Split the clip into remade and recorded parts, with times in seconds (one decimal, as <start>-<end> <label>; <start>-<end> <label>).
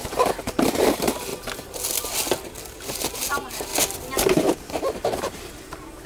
0.0-1.3 remade; 1.3-3.3 recorded; 3.3-3.7 remade; 3.7-4.3 recorded; 4.3-6.1 remade